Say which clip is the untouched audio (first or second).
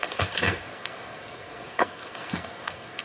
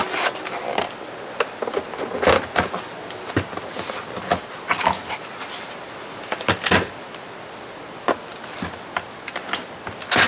second